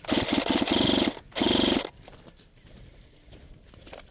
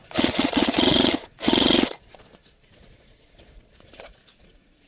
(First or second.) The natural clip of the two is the first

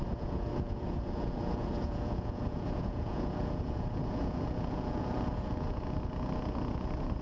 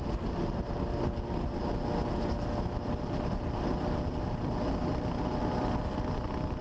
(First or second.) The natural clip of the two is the second